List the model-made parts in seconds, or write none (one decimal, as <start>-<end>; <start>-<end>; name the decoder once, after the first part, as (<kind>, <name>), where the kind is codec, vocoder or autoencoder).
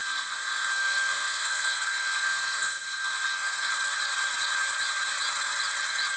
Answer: 0.0-3.7 (codec, SNAC)